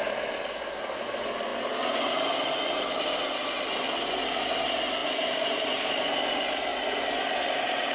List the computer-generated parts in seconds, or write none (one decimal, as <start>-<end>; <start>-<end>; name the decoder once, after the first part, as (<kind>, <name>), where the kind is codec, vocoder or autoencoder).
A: 5.0-5.9 (vocoder, BigVGAN v2); 6.7-7.9